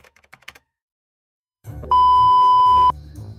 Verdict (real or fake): fake